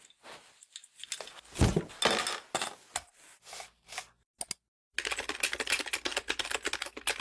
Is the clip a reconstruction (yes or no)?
no